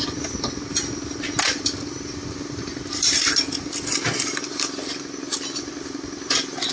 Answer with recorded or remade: recorded